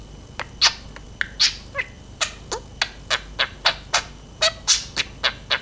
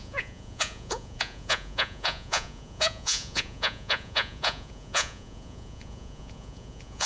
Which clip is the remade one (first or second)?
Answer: second